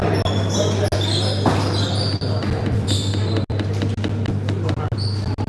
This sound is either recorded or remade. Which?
recorded